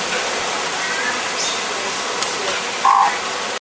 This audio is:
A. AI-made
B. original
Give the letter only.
B